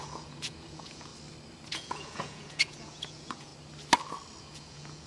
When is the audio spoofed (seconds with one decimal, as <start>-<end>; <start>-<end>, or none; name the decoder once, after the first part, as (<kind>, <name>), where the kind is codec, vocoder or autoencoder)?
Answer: 0.0-1.1 (vocoder, Vocos); 1.7-3.5; 4.4-5.1